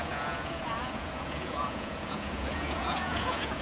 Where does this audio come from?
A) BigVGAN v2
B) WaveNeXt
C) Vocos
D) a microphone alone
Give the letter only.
C